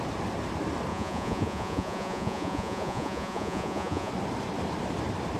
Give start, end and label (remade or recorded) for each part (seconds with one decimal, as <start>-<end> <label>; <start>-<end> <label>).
0.0-0.9 recorded; 0.9-4.1 remade; 4.1-5.4 recorded